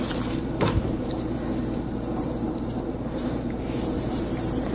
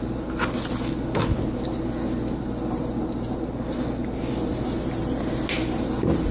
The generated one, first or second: first